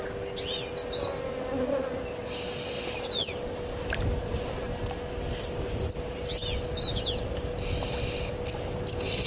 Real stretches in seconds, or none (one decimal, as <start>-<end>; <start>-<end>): 0.0-9.3